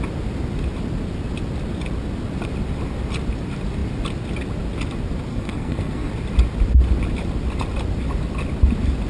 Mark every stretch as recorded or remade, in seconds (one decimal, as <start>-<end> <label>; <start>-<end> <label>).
0.0-5.3 recorded; 5.3-6.1 remade; 6.1-9.1 recorded